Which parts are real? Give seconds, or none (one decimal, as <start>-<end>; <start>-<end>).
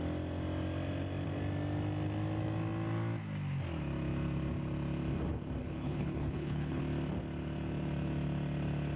0.0-5.6; 6.8-9.0